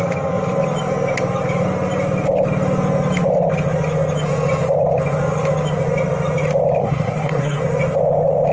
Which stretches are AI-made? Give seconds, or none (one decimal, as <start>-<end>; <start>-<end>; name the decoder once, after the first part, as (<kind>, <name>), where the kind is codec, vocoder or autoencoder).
6.8-7.6 (codec, SNAC)